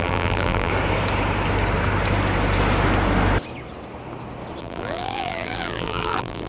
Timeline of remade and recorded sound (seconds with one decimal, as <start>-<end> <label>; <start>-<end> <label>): 0.0-0.7 remade; 0.7-4.6 recorded; 4.6-6.5 remade